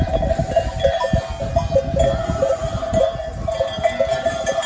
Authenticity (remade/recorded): recorded